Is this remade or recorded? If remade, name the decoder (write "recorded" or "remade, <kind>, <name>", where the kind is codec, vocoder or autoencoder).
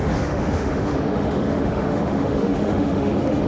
remade, autoencoder, DAC-VAE